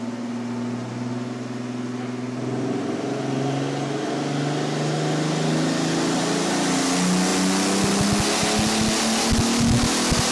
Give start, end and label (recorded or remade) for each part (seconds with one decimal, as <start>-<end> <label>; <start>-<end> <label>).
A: 0.0-10.3 recorded